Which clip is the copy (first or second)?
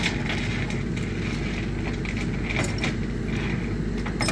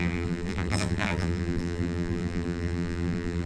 second